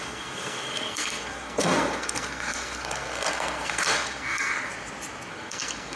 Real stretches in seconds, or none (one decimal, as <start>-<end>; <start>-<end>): 4.7-5.3

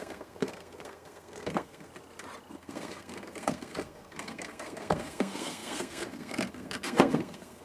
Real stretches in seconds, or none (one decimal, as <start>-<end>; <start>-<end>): 1.9-2.5

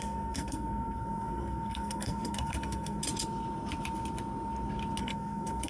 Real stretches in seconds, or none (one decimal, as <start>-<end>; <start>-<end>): 3.0-5.0

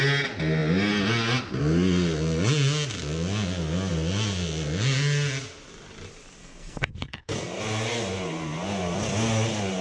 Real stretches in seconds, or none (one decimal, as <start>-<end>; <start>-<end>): 0.0-6.4; 7.6-9.8

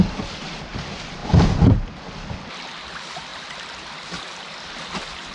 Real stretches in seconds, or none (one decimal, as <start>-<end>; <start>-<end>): 0.0-5.3

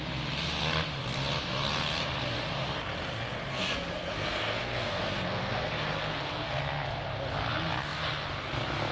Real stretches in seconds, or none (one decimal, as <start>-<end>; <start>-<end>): 0.0-3.5; 6.6-8.9

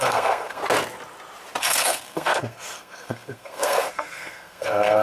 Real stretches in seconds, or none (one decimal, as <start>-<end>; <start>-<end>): 0.6-1.6

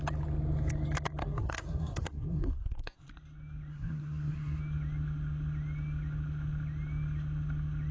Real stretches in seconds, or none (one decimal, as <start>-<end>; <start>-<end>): 0.0-1.2; 3.1-3.7; 4.6-7.9